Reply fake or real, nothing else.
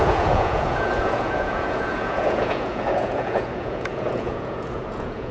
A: fake